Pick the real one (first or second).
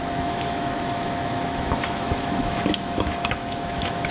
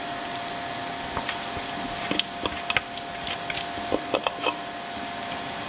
second